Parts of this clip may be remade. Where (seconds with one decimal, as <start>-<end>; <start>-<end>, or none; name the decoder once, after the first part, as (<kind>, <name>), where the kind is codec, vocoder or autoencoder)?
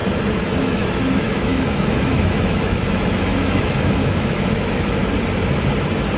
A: 0.6-5.0 (autoencoder, DAC-VAE)